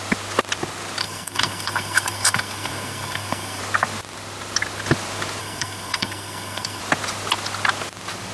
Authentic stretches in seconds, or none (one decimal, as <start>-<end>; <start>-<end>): 0.0-1.0; 3.6-5.4; 6.8-8.3